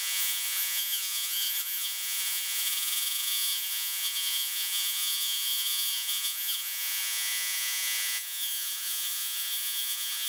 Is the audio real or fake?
fake